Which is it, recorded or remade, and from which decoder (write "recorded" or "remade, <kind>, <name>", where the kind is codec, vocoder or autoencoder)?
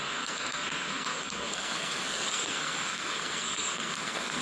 remade, codec, SNAC